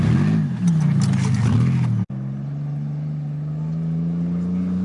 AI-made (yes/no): no